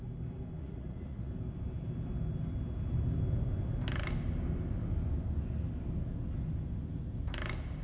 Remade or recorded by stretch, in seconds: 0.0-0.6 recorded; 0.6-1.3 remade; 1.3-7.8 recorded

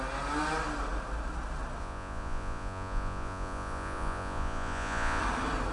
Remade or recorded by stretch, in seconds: 0.0-1.8 recorded; 1.8-5.2 remade; 5.2-5.7 recorded